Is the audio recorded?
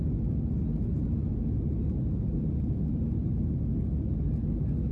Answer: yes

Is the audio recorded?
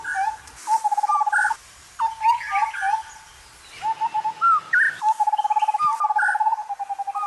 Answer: yes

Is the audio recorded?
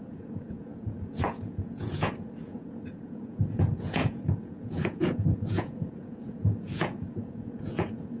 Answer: no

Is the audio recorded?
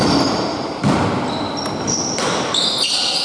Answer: yes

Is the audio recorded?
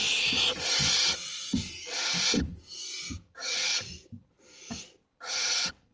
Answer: yes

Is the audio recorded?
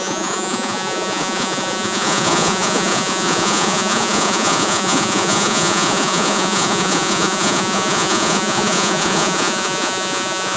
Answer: no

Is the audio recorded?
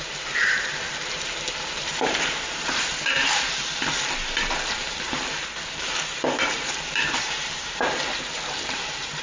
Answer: no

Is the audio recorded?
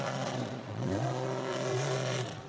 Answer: no